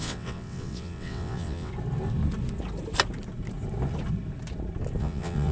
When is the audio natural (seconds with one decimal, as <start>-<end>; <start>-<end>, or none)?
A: 1.7-5.0